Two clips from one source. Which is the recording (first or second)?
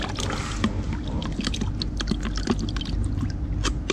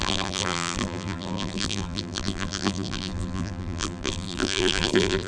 first